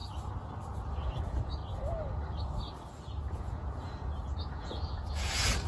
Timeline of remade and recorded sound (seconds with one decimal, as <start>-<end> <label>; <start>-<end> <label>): 0.0-1.2 recorded; 1.2-1.6 remade; 1.6-3.3 recorded; 3.3-5.7 remade